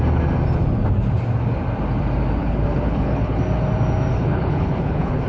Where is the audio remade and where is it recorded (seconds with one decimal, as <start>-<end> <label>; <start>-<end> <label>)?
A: 0.0-2.4 recorded; 2.4-3.4 remade; 3.4-4.1 recorded; 4.1-5.3 remade